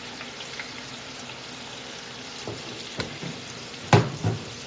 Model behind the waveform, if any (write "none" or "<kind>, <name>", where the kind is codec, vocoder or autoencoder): none